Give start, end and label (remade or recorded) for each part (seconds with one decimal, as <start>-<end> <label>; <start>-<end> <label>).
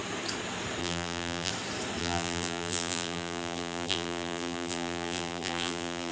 0.0-0.8 recorded; 0.8-1.5 remade; 1.5-2.0 recorded; 2.0-6.1 remade